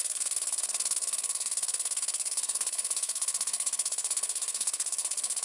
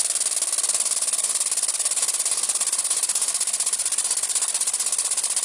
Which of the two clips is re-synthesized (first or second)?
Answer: first